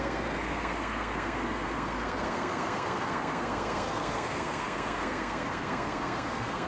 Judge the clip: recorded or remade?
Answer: remade